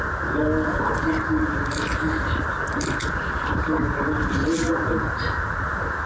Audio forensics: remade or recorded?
recorded